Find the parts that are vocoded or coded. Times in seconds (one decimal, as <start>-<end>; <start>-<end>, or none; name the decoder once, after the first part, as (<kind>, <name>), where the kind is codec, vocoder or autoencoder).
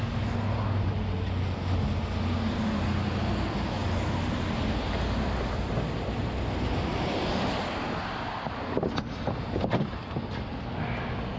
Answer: none